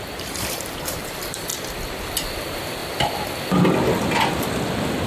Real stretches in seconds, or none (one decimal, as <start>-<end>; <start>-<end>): 1.5-2.4; 2.8-5.1